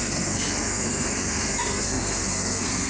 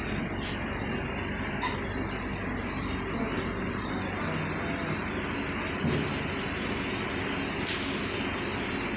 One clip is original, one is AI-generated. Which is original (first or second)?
second